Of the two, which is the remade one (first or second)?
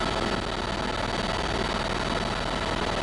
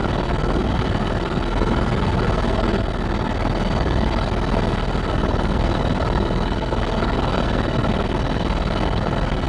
second